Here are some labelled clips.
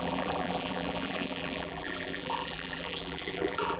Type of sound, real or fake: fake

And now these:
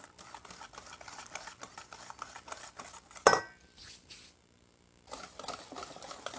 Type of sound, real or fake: real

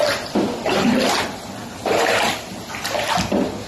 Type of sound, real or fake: real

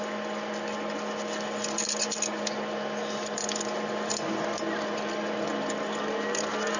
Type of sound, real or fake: real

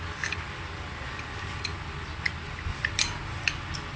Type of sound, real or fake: real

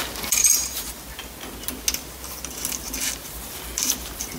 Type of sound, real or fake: real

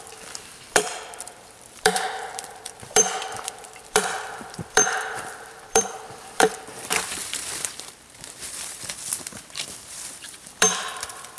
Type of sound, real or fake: fake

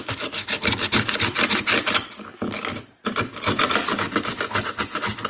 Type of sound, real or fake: fake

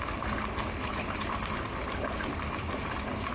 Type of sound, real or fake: fake